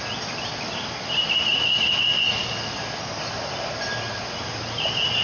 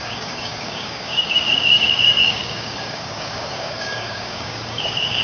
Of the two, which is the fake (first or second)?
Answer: second